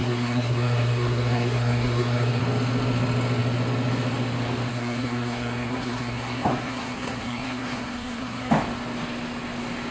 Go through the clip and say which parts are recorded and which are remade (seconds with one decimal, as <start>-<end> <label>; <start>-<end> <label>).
0.0-2.4 remade; 2.4-4.7 recorded; 4.7-8.5 remade; 8.5-9.9 recorded